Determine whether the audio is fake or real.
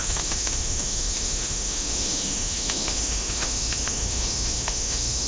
fake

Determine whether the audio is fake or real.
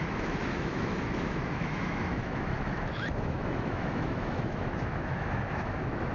fake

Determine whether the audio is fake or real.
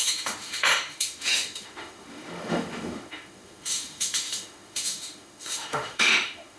fake